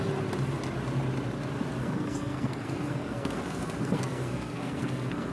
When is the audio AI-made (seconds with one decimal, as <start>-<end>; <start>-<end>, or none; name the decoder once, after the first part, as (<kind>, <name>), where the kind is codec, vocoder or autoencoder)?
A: 1.8-5.3 (codec, SNAC)